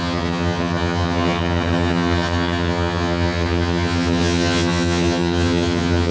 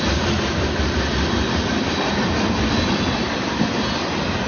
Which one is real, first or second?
second